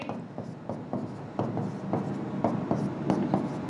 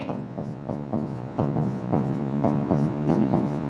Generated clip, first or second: second